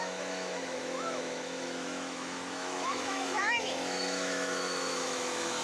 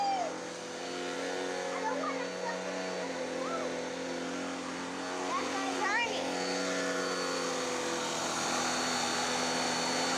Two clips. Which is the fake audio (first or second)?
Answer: first